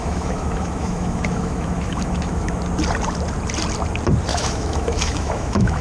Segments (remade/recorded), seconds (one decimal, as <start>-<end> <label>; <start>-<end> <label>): 0.0-2.6 remade; 2.6-4.3 recorded; 4.3-5.8 remade